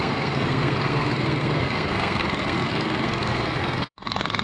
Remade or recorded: remade